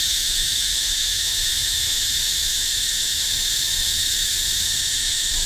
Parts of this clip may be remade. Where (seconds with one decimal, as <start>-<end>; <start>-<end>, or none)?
0.0-5.5

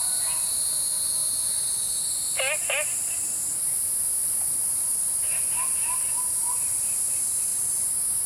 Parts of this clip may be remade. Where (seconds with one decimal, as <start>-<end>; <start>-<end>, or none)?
none

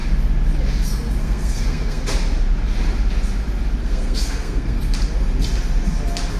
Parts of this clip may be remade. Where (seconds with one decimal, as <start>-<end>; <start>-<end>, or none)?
1.2-2.0; 3.8-4.8

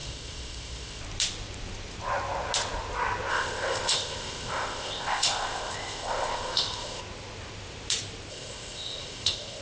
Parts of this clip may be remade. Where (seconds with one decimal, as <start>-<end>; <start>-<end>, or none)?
0.0-1.0; 3.3-7.0; 8.3-9.6